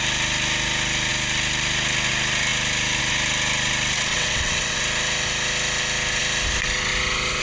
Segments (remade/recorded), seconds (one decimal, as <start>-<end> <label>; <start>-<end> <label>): 0.0-4.1 recorded; 4.1-4.8 remade; 4.8-7.4 recorded